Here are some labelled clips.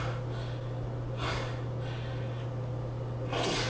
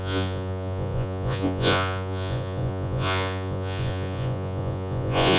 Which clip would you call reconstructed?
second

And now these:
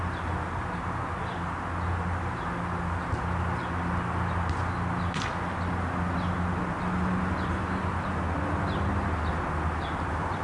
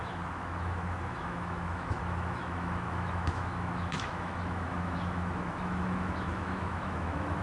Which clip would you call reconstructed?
second